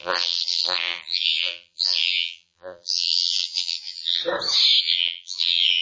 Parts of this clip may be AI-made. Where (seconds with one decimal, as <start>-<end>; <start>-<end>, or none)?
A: 0.0-4.2; 4.8-5.8